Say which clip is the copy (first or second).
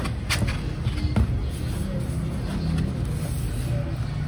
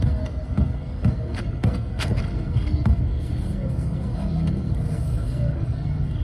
second